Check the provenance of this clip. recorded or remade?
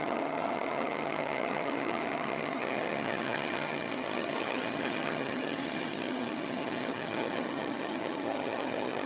remade